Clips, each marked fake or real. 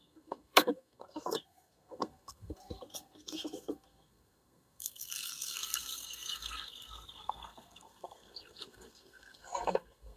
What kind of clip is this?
fake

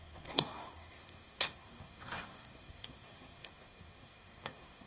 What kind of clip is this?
fake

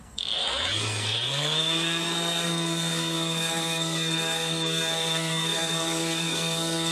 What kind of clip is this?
fake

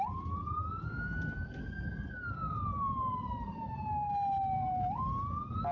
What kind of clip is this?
real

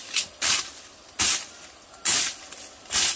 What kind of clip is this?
real